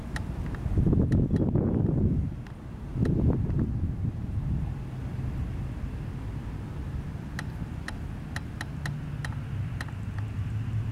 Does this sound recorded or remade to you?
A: recorded